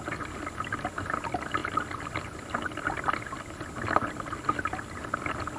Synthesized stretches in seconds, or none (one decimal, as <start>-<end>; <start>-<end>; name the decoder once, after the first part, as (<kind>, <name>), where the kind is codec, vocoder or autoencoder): none